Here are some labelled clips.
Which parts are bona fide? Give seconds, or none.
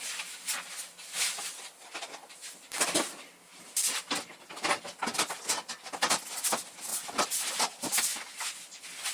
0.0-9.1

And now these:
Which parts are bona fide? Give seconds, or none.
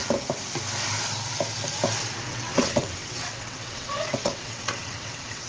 0.0-2.3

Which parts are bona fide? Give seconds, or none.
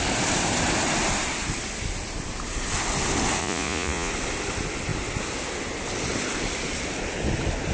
0.0-3.4; 4.1-7.7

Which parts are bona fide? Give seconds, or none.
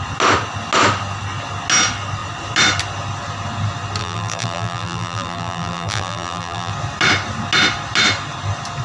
0.0-4.0; 6.7-8.8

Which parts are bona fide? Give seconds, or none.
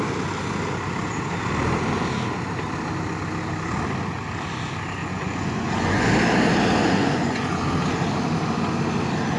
0.0-5.0; 6.1-6.8; 7.6-9.4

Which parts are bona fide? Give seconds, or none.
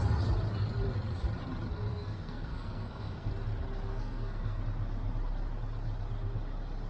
0.0-1.9; 3.3-3.9; 4.6-6.9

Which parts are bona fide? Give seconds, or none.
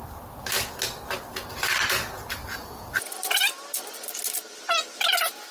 0.0-5.5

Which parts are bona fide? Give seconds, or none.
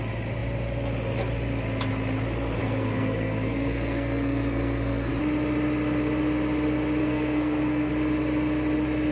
0.0-2.6; 5.1-7.0; 7.9-9.1